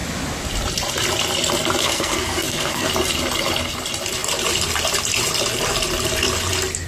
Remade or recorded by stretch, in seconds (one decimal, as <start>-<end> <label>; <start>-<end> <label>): 0.0-1.8 recorded; 1.8-2.9 remade; 2.9-6.9 recorded